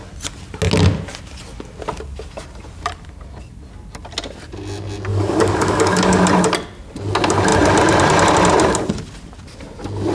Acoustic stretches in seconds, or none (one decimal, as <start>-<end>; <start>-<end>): 0.0-5.1; 6.2-10.1